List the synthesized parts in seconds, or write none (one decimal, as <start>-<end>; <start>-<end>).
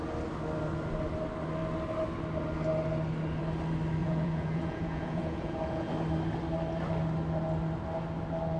4.0-5.9